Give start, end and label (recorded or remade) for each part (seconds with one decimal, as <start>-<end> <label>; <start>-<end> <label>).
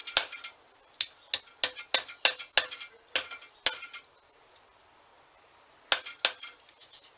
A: 0.0-7.2 recorded